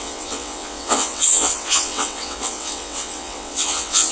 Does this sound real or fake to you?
fake